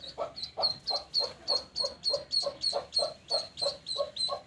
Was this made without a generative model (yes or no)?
yes